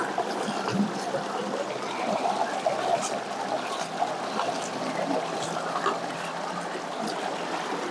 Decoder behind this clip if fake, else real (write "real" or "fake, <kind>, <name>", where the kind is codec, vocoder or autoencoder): real